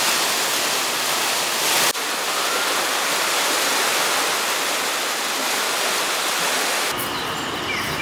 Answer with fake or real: real